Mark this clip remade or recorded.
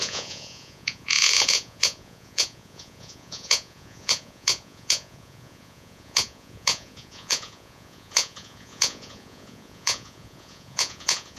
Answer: remade